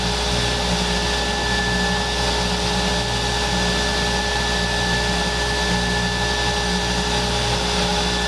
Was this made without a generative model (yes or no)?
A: yes